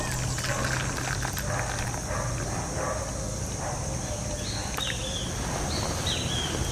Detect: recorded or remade recorded